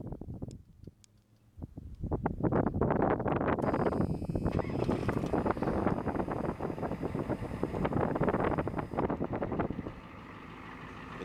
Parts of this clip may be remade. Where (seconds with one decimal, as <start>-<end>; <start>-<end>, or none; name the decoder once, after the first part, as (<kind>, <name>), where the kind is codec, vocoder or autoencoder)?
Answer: none